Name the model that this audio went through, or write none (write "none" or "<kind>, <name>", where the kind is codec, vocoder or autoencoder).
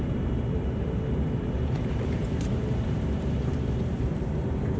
vocoder, BigVGAN v2